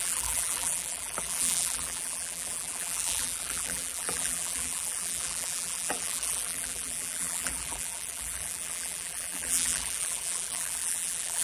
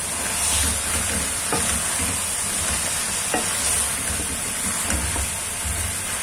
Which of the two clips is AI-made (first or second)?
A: first